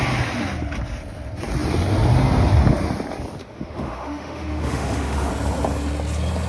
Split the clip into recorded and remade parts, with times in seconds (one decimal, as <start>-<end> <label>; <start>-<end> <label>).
0.0-3.4 recorded; 3.4-5.3 remade; 5.3-6.5 recorded